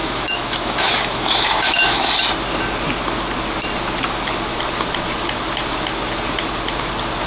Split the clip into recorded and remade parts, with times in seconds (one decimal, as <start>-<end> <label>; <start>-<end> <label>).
0.0-2.1 remade; 2.1-7.3 recorded